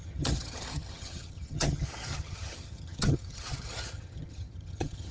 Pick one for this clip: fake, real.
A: fake